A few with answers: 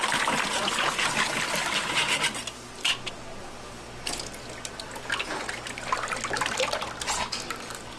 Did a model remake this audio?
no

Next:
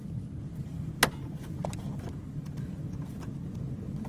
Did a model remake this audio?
no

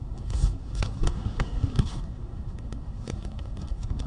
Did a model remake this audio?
yes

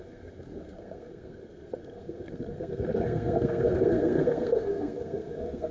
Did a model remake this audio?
yes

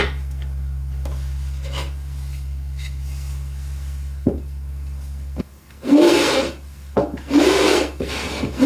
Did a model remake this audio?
yes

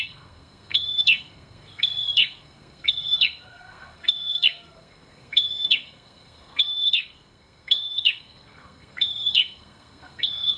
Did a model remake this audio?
yes